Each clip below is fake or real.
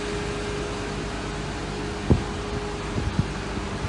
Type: real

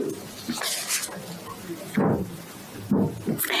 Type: real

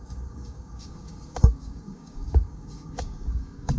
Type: fake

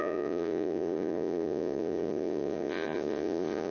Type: fake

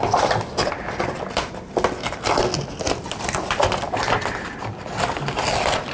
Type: real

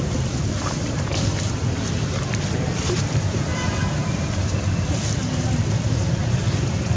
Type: fake